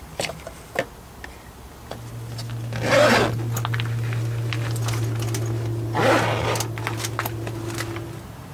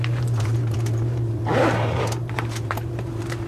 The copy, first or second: second